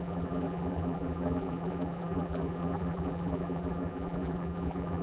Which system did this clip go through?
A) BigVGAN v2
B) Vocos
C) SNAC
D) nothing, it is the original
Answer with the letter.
A